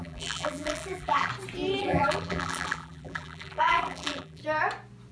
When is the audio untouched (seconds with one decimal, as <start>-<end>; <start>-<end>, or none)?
1.3-1.8; 4.4-5.1